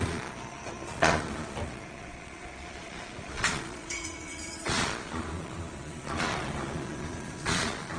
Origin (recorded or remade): remade